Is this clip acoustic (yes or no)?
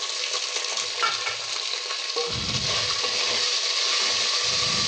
yes